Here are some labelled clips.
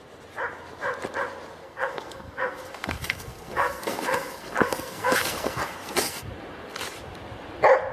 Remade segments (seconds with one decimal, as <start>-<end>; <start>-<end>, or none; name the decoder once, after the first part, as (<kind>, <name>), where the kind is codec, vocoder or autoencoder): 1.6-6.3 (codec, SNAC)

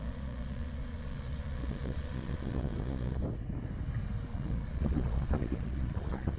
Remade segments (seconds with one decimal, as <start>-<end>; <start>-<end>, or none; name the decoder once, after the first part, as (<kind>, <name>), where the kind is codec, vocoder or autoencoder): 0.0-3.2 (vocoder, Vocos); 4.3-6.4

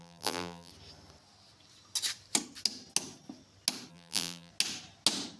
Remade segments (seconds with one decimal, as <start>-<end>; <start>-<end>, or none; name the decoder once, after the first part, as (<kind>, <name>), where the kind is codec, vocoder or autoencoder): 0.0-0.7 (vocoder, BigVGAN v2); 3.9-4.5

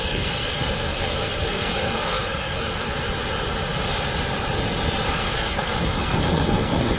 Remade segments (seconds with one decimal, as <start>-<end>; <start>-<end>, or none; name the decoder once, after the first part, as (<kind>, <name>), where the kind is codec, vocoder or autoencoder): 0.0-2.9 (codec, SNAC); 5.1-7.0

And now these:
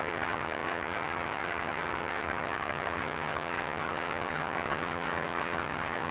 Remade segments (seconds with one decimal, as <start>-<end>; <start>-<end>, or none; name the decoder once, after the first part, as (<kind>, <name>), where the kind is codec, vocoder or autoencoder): 0.0-6.1 (vocoder, HiFi-GAN)

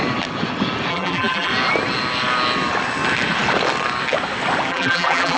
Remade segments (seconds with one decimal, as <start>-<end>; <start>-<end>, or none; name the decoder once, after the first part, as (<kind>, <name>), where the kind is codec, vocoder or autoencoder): 0.9-1.5 (vocoder, BigVGAN v2); 4.7-5.4

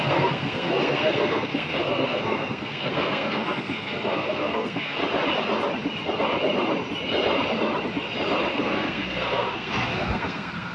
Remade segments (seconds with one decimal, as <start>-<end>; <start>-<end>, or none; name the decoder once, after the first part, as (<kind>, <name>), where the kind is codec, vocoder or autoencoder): 0.0-5.0 (codec, SNAC); 8.5-10.7

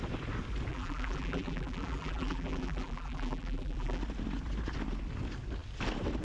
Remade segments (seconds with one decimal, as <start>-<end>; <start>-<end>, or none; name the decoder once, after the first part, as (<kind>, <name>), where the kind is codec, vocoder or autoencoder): 0.7-4.0 (vocoder, BigVGAN v2)